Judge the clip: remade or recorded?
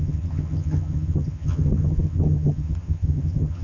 remade